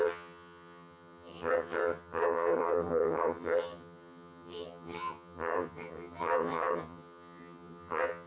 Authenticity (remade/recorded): remade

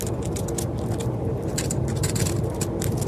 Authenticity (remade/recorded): recorded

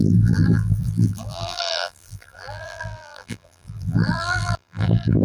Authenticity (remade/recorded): remade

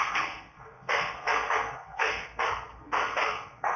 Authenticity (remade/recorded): remade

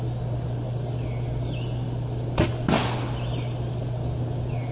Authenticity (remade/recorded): recorded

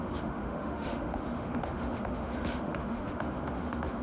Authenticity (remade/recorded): remade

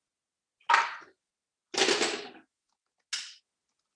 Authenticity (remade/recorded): recorded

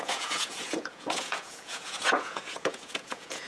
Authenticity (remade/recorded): remade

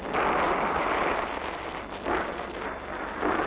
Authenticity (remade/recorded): recorded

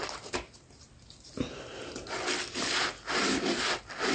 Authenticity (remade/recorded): recorded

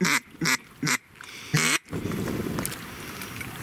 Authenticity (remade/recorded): recorded